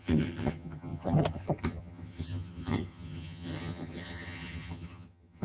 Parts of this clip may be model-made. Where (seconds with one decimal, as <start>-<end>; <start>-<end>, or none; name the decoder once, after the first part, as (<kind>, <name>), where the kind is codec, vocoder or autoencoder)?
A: 0.0-5.4 (vocoder, HiFi-GAN)